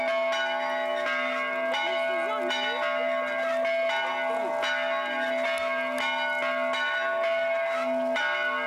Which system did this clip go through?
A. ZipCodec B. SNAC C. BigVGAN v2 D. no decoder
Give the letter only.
D